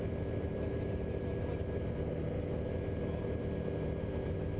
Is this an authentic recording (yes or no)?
yes